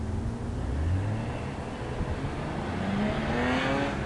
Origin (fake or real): real